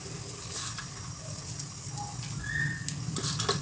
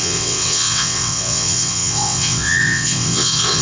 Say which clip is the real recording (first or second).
first